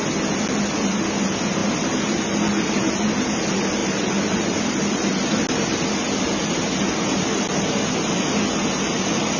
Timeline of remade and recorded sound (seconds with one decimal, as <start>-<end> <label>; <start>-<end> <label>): 0.0-3.8 recorded; 3.8-4.6 remade; 4.6-9.4 recorded